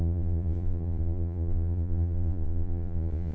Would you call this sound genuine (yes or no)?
no